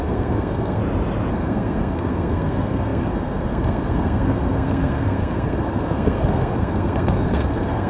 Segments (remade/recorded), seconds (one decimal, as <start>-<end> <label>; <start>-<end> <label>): 0.0-0.8 remade; 0.8-1.3 recorded; 1.3-7.9 remade